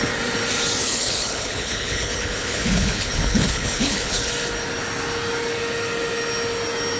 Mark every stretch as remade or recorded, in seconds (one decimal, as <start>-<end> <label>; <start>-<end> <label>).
0.0-0.8 recorded; 0.8-4.3 remade; 4.3-7.0 recorded